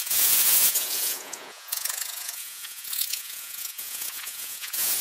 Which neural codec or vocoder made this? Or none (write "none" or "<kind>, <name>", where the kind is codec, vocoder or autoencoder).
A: vocoder, Vocos